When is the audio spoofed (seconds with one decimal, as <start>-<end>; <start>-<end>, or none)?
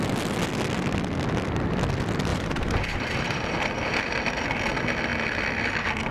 2.3-4.1